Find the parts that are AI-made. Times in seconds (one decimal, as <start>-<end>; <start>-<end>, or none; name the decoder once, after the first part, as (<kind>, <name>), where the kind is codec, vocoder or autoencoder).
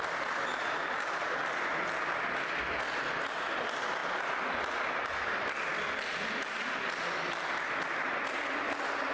none